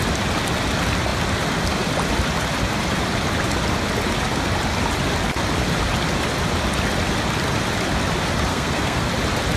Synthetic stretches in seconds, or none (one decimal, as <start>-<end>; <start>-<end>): 8.5-9.1